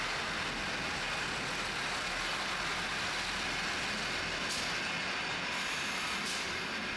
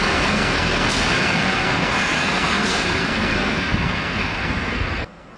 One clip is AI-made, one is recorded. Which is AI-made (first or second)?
second